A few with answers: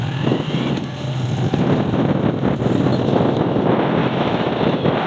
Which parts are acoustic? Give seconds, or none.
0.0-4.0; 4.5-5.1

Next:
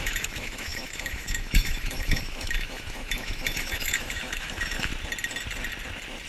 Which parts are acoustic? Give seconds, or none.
4.9-6.3

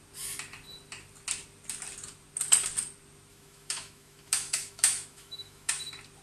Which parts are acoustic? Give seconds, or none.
0.0-3.3; 5.7-6.2

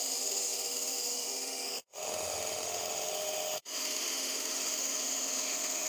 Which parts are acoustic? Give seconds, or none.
none

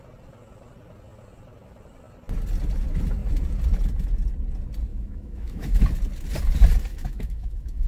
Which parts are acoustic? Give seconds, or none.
0.0-4.9; 5.8-6.9

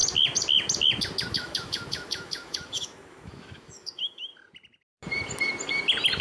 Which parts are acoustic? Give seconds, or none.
0.0-1.3; 4.3-6.2